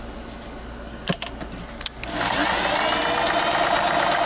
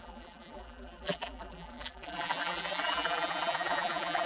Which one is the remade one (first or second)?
second